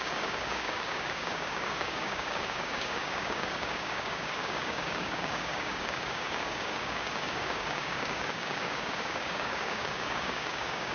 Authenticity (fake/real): fake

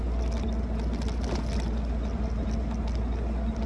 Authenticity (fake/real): real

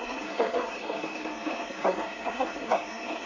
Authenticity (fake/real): fake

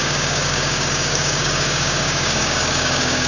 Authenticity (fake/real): fake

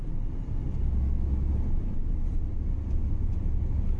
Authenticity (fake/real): real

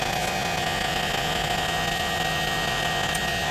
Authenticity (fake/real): real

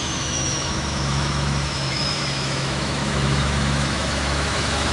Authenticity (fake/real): fake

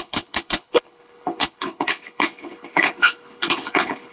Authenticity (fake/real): fake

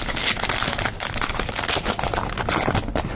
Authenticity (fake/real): real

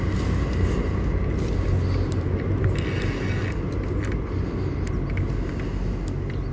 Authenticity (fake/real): real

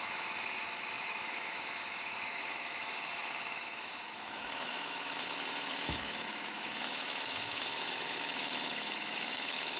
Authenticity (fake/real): fake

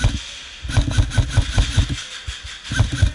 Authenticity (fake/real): real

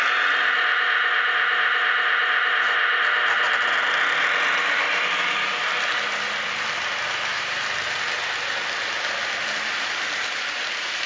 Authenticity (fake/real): real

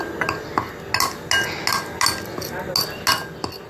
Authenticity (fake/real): real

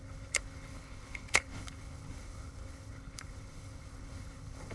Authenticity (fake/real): fake